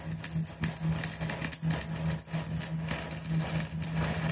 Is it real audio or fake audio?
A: real